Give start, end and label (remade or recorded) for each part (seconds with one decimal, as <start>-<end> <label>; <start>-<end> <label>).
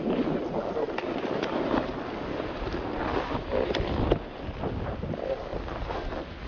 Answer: 0.0-6.5 recorded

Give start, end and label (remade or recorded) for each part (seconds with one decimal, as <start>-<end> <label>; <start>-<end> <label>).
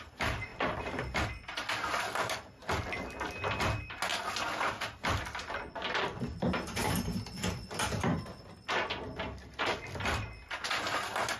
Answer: 0.0-11.4 recorded